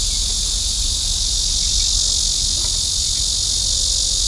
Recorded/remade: recorded